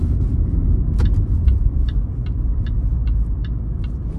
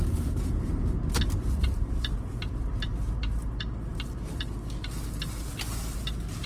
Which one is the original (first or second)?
second